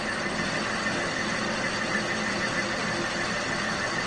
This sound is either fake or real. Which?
real